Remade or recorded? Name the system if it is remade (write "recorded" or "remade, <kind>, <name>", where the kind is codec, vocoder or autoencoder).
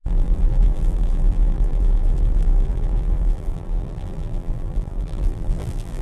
remade, vocoder, BigVGAN v2